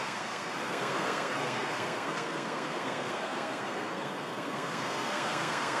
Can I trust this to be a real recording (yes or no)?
no